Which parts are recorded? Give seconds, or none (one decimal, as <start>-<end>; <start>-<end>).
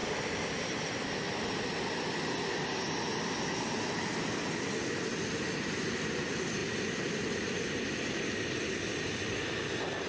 2.3-10.1